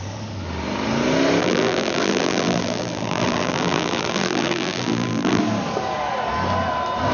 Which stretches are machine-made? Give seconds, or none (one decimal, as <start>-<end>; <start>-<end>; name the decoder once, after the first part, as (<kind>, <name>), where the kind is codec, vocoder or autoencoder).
1.4-5.4 (vocoder, BigVGAN v2)